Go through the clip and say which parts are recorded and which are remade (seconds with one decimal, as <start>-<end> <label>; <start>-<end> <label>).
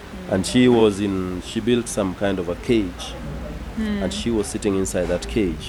0.0-0.8 recorded; 0.8-1.9 remade; 1.9-5.7 recorded